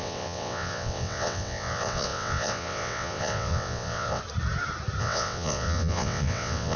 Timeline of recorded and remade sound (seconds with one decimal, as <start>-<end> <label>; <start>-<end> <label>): 0.0-4.2 remade; 4.2-5.0 recorded; 5.0-6.8 remade